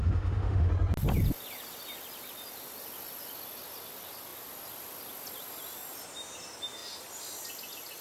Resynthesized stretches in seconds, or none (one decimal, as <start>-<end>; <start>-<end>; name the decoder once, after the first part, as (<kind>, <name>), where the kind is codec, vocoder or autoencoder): 0.0-0.7 (autoencoder, DAC-VAE)